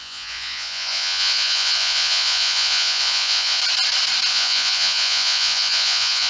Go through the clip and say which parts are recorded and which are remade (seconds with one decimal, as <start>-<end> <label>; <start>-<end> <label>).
0.0-3.6 remade; 3.6-4.3 recorded; 4.3-6.3 remade